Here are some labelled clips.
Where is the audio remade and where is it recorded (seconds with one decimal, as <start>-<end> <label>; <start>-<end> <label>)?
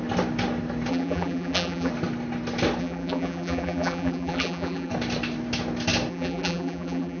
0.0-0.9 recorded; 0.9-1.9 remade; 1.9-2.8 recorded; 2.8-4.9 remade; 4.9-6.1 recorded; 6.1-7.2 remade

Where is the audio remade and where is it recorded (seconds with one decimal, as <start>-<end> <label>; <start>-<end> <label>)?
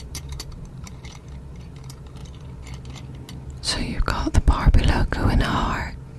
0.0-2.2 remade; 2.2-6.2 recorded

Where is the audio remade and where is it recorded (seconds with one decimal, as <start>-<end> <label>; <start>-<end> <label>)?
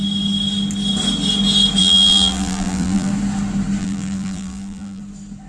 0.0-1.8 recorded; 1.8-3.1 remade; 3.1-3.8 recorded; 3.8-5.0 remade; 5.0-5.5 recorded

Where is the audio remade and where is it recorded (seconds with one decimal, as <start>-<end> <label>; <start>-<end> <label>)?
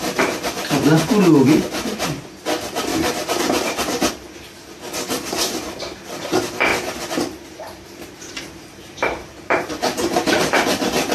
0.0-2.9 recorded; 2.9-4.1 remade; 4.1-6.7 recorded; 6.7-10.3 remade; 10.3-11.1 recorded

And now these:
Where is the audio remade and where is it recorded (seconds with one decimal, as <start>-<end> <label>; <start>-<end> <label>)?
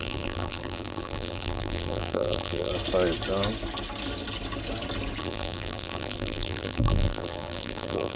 0.0-2.7 remade; 2.7-5.2 recorded; 5.2-8.2 remade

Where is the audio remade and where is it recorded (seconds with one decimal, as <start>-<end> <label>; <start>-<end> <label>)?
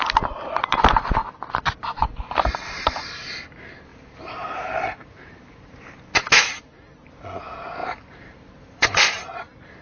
0.0-3.9 recorded; 3.9-6.0 remade; 6.0-7.8 recorded; 7.8-9.4 remade; 9.4-9.8 recorded